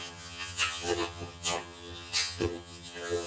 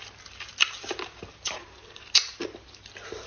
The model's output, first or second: first